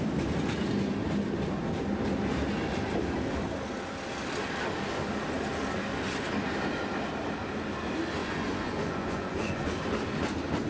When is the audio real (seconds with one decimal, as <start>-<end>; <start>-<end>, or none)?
0.0-8.2; 9.7-10.7